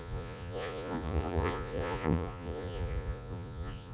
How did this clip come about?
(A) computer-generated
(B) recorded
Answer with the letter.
A